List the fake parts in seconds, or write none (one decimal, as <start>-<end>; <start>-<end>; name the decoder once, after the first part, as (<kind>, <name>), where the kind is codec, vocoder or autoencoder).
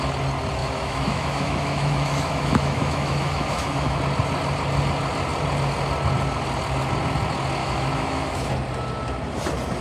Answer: 0.6-4.0 (autoencoder, DAC-VAE); 7.6-8.5